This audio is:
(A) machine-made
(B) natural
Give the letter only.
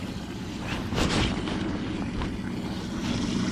B